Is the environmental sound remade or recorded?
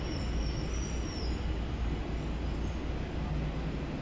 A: recorded